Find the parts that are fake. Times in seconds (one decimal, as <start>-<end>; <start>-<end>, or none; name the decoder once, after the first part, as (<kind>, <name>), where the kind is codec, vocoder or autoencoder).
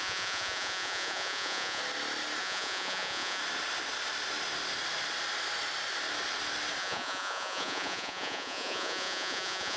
0.0-1.8 (vocoder, Vocos); 2.4-3.4; 6.8-9.8